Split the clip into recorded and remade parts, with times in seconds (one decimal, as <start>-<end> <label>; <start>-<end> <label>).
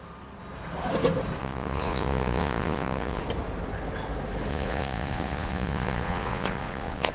0.0-1.4 recorded; 1.4-3.2 remade; 3.2-4.5 recorded; 4.5-7.1 remade